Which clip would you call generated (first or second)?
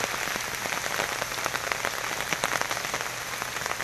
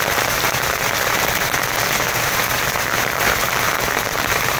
second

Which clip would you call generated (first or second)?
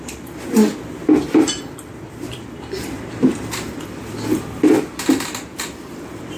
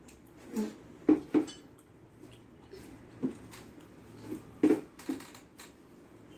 first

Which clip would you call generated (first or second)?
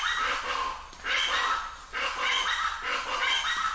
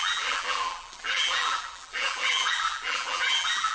second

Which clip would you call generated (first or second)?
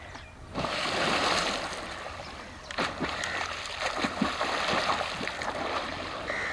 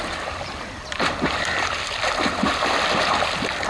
second